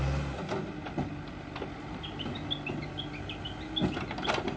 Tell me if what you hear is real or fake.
real